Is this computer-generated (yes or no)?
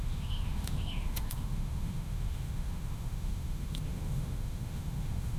yes